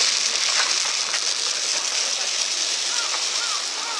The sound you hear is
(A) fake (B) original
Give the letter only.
B